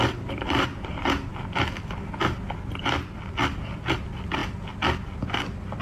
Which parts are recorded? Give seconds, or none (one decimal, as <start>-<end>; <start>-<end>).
1.3-4.0; 4.4-5.8